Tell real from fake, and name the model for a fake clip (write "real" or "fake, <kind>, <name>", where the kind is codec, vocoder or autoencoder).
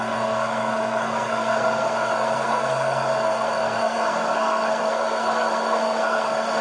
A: fake, codec, SNAC